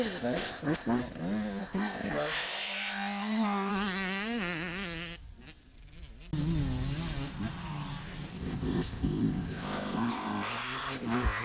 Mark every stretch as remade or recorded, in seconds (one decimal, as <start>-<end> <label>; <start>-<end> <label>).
0.0-1.0 remade; 1.0-1.6 recorded; 1.6-3.7 remade; 3.7-8.3 recorded; 8.3-11.4 remade